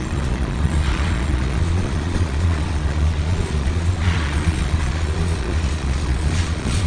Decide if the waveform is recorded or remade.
remade